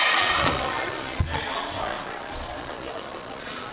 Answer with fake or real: fake